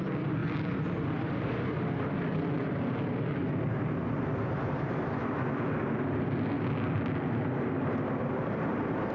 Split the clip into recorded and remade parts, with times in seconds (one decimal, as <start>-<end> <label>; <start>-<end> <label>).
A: 0.0-0.4 recorded; 0.4-2.5 remade; 2.5-9.1 recorded